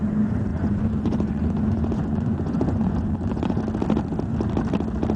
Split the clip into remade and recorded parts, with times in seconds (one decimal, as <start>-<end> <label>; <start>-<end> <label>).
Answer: 0.0-0.5 recorded; 0.5-3.6 remade; 3.6-5.2 recorded